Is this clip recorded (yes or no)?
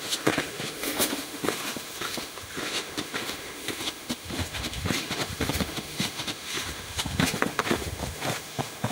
no